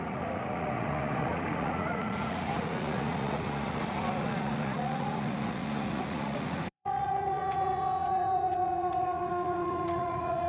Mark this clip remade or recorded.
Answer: remade